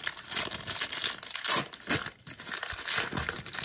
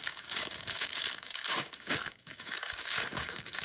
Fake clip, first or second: second